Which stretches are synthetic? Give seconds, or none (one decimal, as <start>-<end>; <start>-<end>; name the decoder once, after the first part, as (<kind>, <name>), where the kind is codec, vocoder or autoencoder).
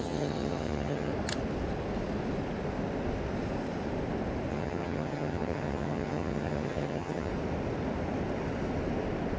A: 0.0-1.1 (vocoder, HiFi-GAN); 4.5-7.3